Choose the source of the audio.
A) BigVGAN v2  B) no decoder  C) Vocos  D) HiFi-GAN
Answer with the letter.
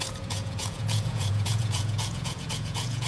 C